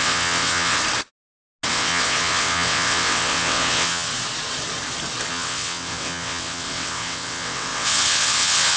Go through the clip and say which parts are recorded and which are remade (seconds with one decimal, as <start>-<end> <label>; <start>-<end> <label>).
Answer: 0.0-0.8 remade; 0.8-1.7 recorded; 1.7-4.1 remade; 4.1-5.3 recorded; 5.3-8.8 remade